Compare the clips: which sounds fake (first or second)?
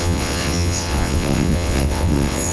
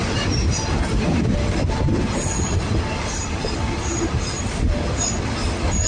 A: first